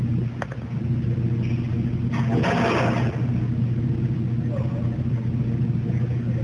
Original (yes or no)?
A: yes